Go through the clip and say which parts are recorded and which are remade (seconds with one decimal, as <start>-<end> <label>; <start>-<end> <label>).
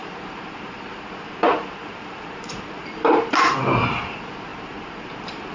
0.0-3.3 remade; 3.3-4.5 recorded; 4.5-5.5 remade